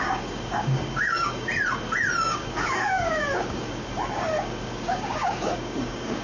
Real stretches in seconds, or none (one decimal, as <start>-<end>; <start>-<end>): 1.5-2.2

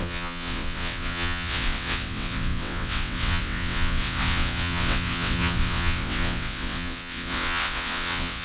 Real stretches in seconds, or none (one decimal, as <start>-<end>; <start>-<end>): none

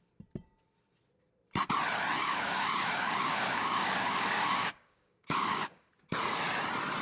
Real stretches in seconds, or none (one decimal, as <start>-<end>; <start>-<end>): 0.0-2.2; 5.9-7.0

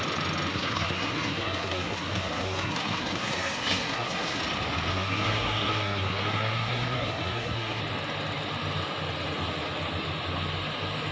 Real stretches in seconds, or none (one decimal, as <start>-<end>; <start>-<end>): 0.0-0.5; 4.4-4.9; 7.8-11.1

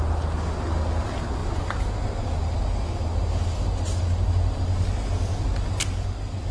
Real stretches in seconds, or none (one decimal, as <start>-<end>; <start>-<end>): 0.0-6.5

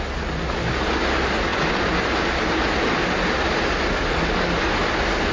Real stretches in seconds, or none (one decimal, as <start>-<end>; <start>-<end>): 0.0-5.3

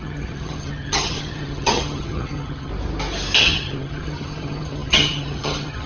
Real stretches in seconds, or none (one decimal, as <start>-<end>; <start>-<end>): 2.7-3.4